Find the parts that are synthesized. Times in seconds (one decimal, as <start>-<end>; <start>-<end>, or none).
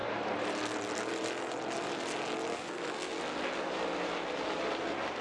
2.5-3.2